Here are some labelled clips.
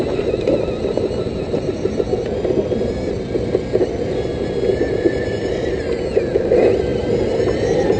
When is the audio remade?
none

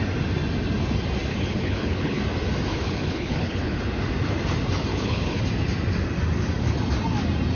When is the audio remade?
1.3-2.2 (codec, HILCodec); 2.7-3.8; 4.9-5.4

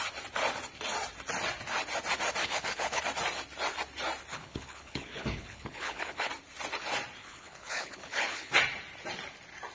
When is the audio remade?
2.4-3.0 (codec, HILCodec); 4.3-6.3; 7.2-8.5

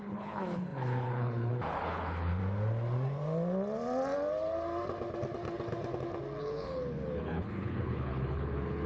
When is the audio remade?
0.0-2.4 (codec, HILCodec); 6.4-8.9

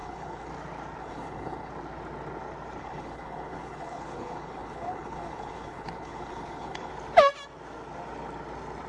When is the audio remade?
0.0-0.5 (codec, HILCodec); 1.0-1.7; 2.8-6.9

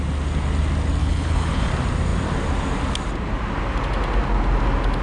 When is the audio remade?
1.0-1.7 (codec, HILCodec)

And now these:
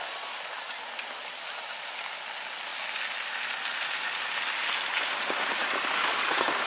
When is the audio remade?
none